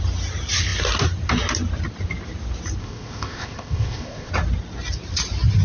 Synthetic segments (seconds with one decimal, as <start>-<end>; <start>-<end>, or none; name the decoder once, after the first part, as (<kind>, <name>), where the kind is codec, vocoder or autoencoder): 2.8-4.3 (codec, ZipCodec)